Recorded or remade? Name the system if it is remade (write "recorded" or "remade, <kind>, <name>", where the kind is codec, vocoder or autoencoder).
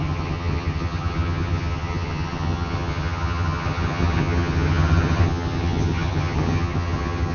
remade, vocoder, HiFi-GAN